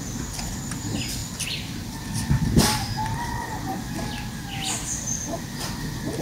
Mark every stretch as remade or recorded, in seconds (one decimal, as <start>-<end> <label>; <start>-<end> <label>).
0.0-6.2 recorded